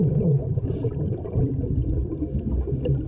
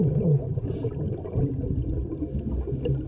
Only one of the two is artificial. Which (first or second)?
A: first